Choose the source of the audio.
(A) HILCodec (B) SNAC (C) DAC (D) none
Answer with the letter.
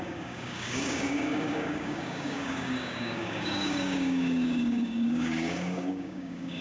C